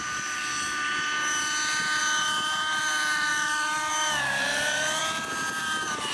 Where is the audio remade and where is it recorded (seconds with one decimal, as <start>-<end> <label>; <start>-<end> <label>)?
0.0-0.4 remade; 0.4-2.0 recorded; 2.0-5.0 remade; 5.0-5.6 recorded; 5.6-6.1 remade